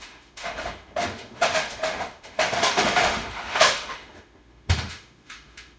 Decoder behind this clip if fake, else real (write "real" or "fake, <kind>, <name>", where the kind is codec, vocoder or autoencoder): fake, autoencoder, DAC-VAE